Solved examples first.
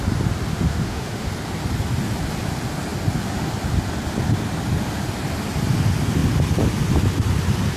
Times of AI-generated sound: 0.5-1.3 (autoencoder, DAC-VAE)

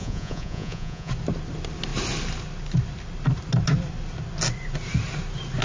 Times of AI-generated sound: 0.0-1.1 (vocoder, Vocos)